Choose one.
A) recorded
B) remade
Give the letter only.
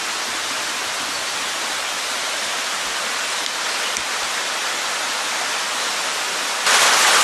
A